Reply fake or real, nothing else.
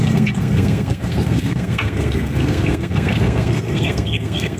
fake